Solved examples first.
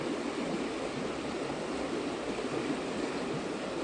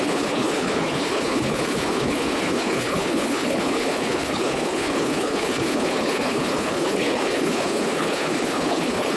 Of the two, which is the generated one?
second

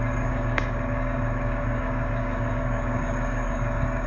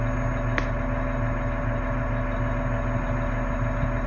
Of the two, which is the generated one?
first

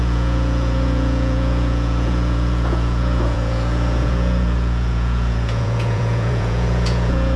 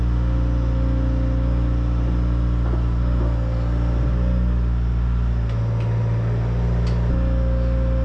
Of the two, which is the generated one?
first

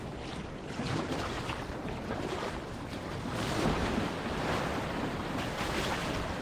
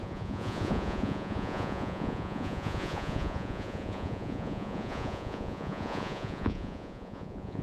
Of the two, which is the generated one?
second